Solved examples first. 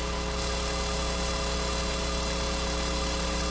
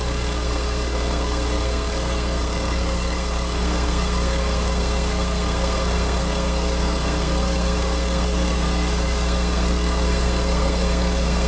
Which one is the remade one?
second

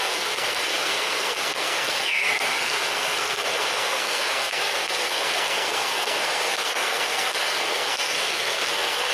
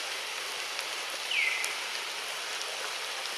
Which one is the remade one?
first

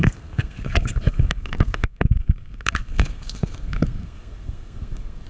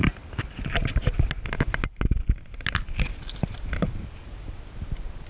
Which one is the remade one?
first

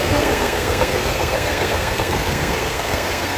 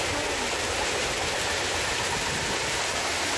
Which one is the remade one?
first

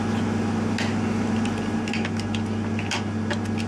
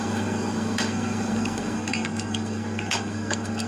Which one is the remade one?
second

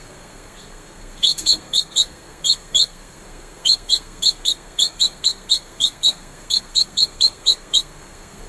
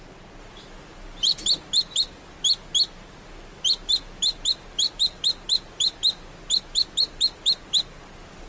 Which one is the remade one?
first